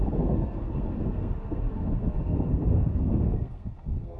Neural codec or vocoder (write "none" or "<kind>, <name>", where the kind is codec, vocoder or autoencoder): codec, SNAC